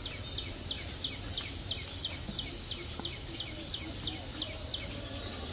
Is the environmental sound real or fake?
real